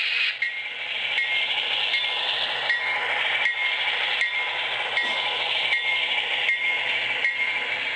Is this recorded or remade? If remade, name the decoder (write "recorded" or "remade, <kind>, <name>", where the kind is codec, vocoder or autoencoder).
remade, vocoder, BigVGAN v2